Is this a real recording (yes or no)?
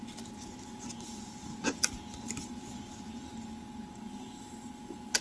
yes